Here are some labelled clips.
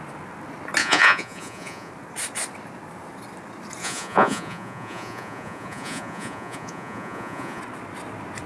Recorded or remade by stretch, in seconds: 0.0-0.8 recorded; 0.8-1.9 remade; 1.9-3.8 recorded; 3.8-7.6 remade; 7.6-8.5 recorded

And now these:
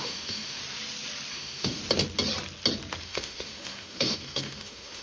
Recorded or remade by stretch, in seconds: 0.0-0.6 remade; 0.6-1.3 recorded; 1.3-1.8 remade; 1.8-3.0 recorded; 3.0-5.0 remade

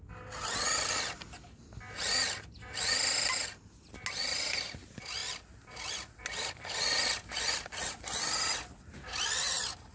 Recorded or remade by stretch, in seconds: 0.0-9.9 recorded

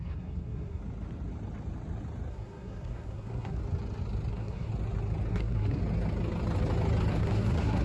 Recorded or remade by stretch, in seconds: 0.0-0.8 remade; 0.8-2.3 recorded; 2.3-3.6 remade; 3.6-4.3 recorded; 4.3-4.7 remade; 4.7-5.3 recorded; 5.3-5.8 remade; 5.8-7.1 recorded; 7.1-7.8 remade

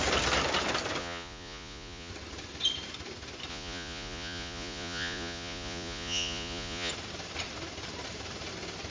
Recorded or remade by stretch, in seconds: 0.0-1.0 recorded; 1.0-2.1 remade; 2.1-3.5 recorded; 3.5-6.9 remade; 6.9-8.9 recorded

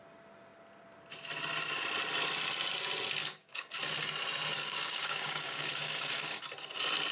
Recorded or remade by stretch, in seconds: 0.0-3.2 recorded; 3.2-3.8 remade; 3.8-4.6 recorded; 4.6-6.4 remade; 6.4-7.1 recorded

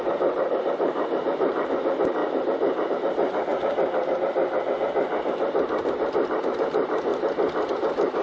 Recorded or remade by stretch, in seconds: 0.0-2.2 remade; 2.2-2.9 recorded; 2.9-3.5 remade; 3.5-6.3 recorded; 6.3-7.1 remade; 7.1-7.7 recorded; 7.7-8.2 remade

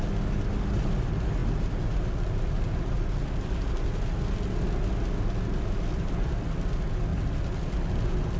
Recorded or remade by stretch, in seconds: 0.0-8.4 recorded